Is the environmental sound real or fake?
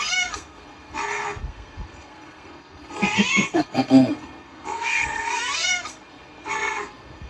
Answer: fake